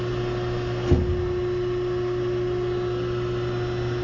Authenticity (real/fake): real